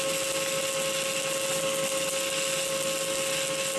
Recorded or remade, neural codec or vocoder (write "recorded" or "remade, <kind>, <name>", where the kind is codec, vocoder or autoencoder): recorded